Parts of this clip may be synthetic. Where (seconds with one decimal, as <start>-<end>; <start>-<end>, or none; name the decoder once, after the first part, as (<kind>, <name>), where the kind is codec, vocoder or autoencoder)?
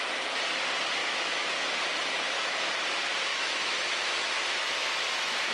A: 1.0-1.5 (autoencoder, DAC-VAE); 2.1-2.7; 3.3-4.9